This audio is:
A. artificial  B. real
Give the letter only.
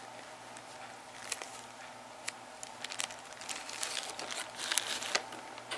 B